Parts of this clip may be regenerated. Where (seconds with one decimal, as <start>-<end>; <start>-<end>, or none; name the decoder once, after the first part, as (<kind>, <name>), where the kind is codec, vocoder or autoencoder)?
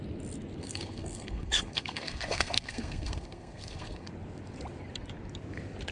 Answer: 0.6-4.1 (codec, SNAC)